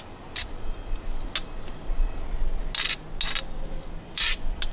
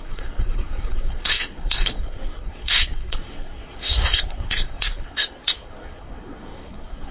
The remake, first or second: second